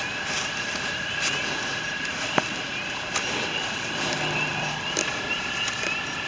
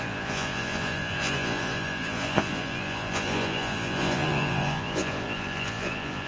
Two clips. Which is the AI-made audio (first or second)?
second